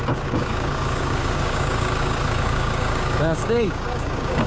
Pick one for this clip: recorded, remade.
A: remade